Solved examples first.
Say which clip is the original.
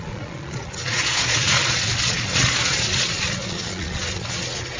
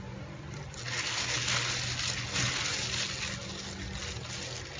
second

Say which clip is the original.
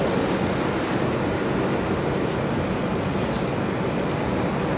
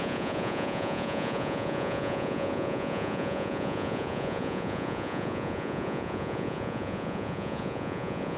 first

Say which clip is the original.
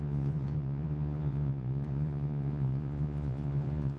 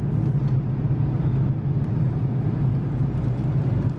second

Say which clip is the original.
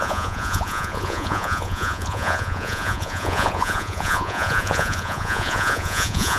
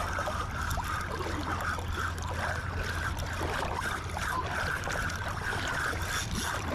second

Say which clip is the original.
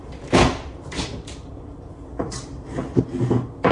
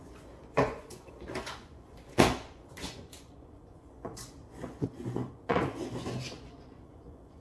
first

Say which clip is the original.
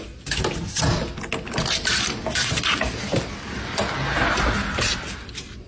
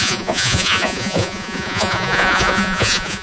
first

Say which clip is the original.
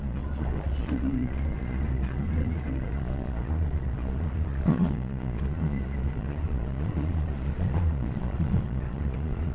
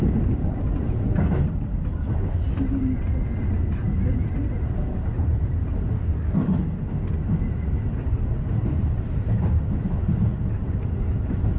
second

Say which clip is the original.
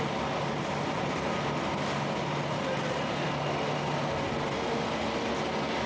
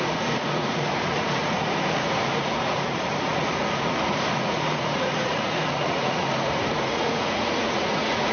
first